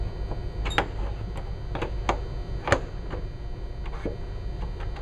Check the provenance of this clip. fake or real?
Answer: real